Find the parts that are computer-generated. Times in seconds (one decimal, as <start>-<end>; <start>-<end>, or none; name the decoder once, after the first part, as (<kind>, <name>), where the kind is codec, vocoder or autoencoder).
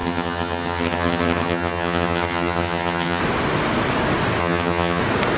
0.0-3.2 (vocoder, HiFi-GAN); 4.4-5.0